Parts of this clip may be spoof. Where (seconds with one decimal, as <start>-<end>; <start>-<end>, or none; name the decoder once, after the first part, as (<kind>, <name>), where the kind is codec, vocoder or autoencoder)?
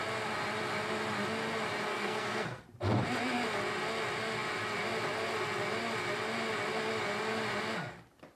1.9-2.6 (codec, SNAC)